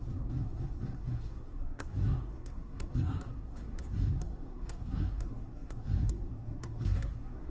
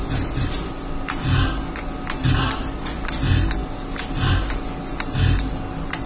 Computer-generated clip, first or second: first